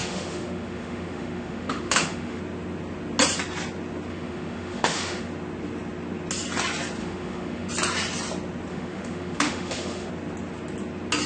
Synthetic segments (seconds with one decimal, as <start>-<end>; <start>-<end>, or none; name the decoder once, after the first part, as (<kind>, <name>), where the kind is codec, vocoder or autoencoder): 0.0-2.4 (autoencoder, DAC-VAE); 4.1-5.3; 7.0-7.7; 8.7-10.1